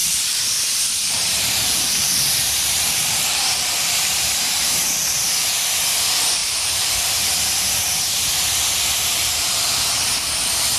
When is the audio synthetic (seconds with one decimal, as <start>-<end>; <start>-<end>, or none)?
0.0-4.9; 6.4-6.9